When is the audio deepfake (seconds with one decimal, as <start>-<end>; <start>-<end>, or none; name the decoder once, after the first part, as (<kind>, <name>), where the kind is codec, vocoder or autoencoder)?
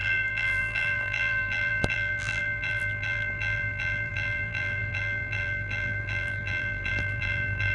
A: 0.0-7.7 (vocoder, BigVGAN v2)